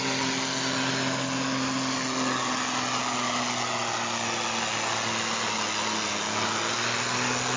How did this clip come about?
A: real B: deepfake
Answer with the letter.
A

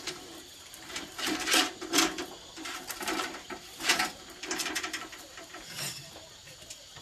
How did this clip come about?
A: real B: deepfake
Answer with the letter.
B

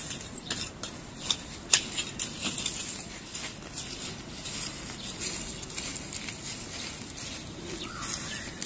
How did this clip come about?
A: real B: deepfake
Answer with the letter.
A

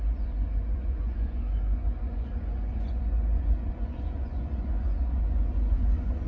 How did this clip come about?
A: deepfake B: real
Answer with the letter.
A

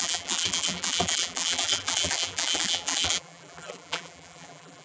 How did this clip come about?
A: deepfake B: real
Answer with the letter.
A